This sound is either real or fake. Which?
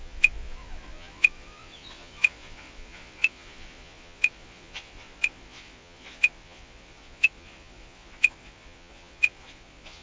fake